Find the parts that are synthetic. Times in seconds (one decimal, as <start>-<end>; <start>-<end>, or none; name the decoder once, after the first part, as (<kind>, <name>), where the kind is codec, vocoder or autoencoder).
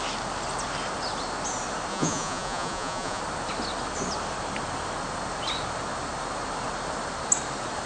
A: 1.9-3.2 (vocoder, Vocos)